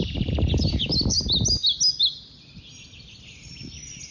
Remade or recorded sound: recorded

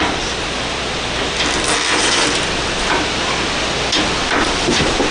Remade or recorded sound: remade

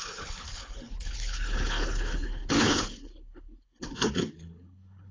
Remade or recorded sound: remade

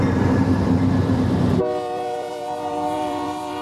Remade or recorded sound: remade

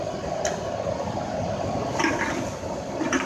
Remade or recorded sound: recorded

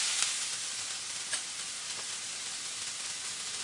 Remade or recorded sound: recorded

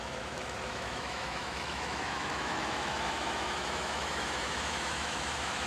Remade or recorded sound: remade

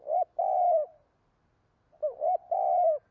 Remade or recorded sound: recorded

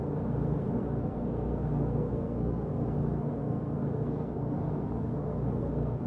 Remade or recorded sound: remade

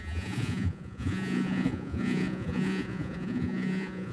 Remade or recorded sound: remade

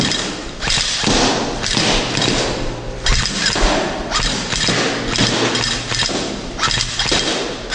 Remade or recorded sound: recorded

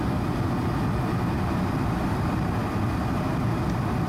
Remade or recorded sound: recorded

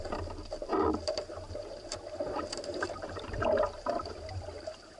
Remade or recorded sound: remade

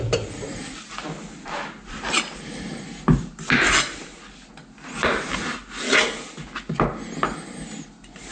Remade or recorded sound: recorded